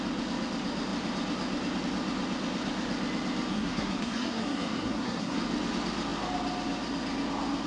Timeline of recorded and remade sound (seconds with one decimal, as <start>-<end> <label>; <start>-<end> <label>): 0.0-3.5 recorded; 3.5-5.4 remade; 5.4-7.7 recorded